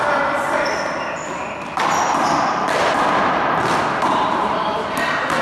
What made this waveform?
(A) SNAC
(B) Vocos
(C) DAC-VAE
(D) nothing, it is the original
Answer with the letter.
D